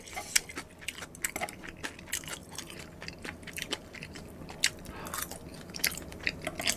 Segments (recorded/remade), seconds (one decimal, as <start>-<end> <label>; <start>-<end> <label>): 0.0-2.4 recorded; 2.4-4.4 remade; 4.4-5.5 recorded; 5.5-6.2 remade; 6.2-6.8 recorded